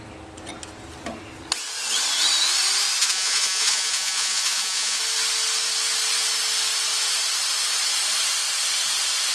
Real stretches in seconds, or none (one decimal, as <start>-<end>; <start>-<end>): 0.0-3.0; 5.0-9.3